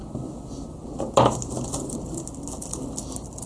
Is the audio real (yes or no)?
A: yes